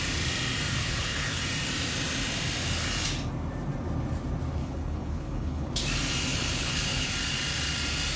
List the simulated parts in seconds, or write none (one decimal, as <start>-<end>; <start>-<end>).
0.8-1.4; 4.6-5.7; 6.3-7.1